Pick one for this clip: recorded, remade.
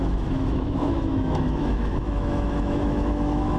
remade